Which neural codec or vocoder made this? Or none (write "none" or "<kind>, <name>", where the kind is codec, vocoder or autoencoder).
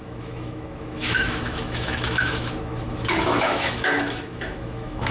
autoencoder, DAC-VAE